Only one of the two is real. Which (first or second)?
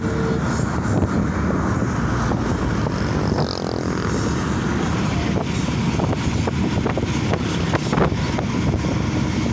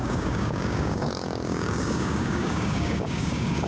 first